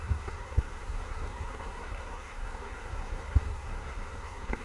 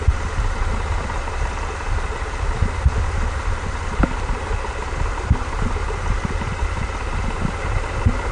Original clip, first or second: second